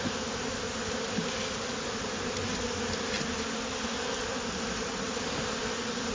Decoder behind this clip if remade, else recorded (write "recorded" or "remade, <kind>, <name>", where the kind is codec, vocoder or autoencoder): recorded